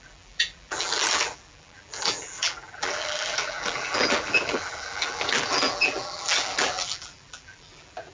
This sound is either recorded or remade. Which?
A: remade